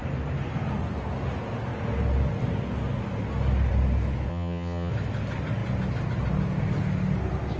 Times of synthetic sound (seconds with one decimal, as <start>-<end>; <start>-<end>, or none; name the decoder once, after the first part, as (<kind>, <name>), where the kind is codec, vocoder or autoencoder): 4.3-4.9 (vocoder, HiFi-GAN)